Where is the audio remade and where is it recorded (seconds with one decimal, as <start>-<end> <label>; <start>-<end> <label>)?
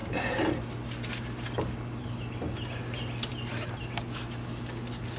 0.0-5.2 recorded